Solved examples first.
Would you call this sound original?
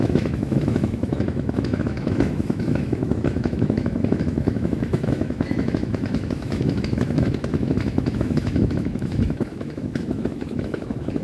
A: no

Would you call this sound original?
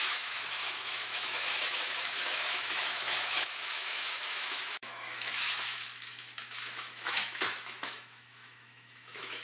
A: no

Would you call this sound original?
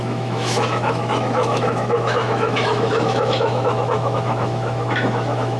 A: no